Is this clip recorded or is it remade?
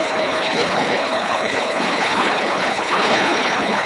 remade